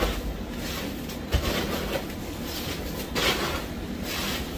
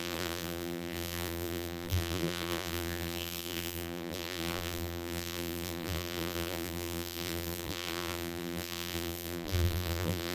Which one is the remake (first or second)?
second